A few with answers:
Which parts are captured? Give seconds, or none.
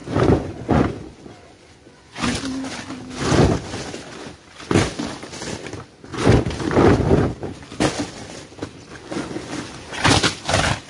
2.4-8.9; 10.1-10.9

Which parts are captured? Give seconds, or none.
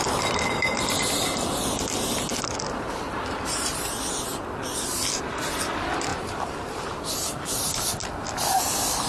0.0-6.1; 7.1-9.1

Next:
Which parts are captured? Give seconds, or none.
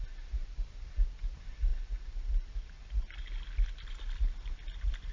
0.0-5.1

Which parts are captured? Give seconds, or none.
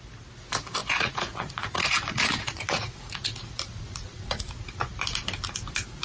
0.0-0.8; 4.4-6.0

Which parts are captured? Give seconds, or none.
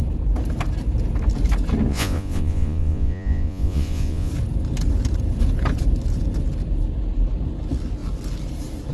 0.0-1.9; 4.3-8.9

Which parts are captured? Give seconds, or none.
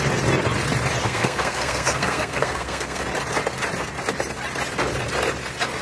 0.0-1.0; 3.0-5.8